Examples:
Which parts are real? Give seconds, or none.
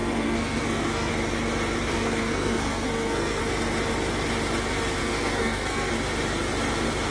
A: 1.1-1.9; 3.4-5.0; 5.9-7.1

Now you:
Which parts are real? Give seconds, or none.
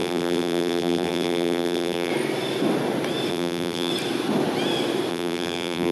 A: 2.1-3.3; 3.9-5.1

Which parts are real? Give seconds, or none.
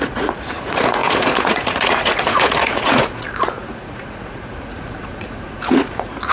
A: none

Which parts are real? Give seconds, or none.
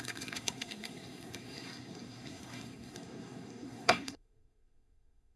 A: none